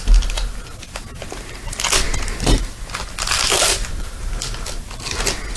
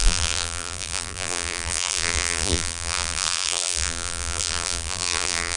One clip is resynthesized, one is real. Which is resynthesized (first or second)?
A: second